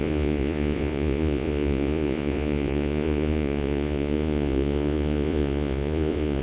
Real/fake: fake